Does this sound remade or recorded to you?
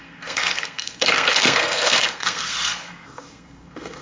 remade